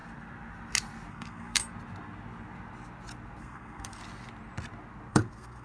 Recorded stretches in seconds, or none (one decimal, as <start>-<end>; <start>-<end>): 0.0-1.1; 1.7-3.4; 4.0-5.1